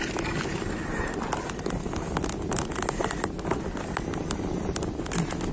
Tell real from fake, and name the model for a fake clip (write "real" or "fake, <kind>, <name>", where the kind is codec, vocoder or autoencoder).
real